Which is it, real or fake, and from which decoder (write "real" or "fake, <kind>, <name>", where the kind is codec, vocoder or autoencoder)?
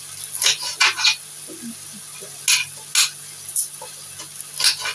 real